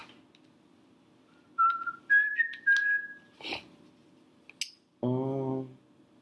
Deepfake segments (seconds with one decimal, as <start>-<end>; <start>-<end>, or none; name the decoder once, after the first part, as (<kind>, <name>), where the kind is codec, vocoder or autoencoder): none